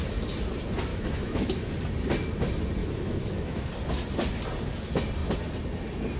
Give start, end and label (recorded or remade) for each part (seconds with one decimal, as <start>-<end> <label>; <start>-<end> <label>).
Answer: 0.0-0.9 recorded; 0.9-1.7 remade; 1.7-2.8 recorded; 2.8-3.7 remade; 3.7-6.2 recorded